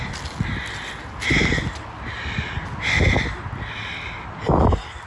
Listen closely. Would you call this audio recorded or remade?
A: recorded